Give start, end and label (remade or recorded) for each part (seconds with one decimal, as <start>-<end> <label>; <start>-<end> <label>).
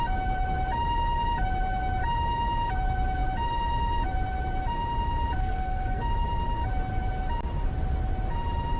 0.0-5.4 recorded; 5.4-6.1 remade; 6.1-8.8 recorded